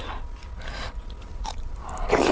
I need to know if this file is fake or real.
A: real